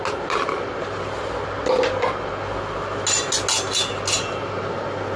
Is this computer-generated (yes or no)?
no